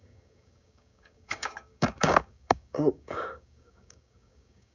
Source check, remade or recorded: remade